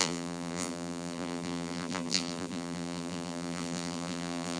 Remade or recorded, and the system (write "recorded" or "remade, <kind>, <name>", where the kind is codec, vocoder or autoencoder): remade, vocoder, BigVGAN v2